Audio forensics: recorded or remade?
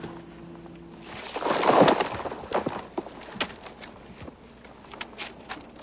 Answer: recorded